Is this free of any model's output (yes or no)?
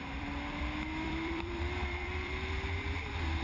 no